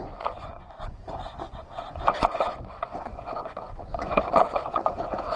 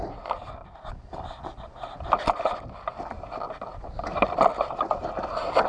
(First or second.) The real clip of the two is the second